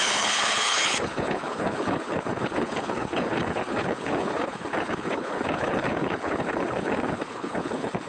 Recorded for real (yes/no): no